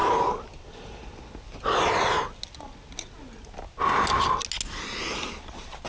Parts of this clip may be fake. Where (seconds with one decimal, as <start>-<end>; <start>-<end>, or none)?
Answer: none